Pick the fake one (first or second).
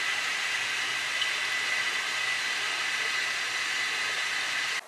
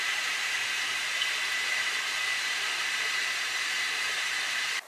second